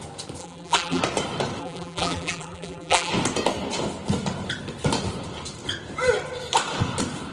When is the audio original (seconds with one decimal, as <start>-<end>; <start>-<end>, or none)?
0.0-0.4; 1.0-1.6; 3.1-7.3

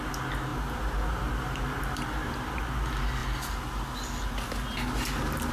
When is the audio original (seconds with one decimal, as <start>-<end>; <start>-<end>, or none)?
0.0-0.5; 2.6-5.5

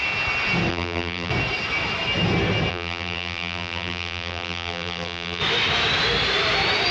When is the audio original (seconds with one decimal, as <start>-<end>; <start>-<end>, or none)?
0.0-0.7; 1.3-2.7; 5.4-6.9

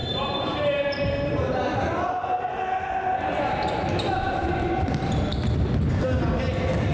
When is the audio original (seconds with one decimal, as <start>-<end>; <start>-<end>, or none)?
1.8-6.9

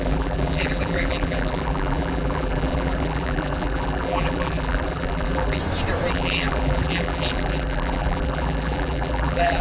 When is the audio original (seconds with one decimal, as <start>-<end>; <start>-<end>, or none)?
5.6-6.1

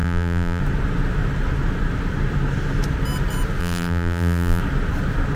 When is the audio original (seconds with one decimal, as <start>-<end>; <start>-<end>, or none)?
0.6-3.6; 4.6-5.4

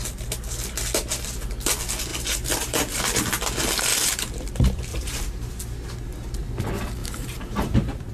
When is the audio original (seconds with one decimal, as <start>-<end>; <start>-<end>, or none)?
0.0-2.1; 3.0-3.9; 4.5-4.9; 5.5-7.0

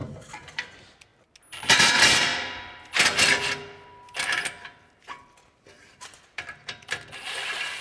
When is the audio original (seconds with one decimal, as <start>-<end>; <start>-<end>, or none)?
1.1-1.8; 2.3-5.4